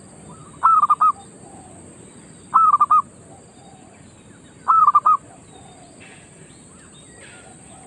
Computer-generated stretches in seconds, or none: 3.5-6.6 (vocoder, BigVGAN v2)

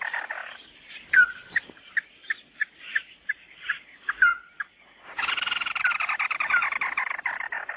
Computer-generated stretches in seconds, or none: 0.4-2.3 (vocoder, BigVGAN v2); 2.9-3.8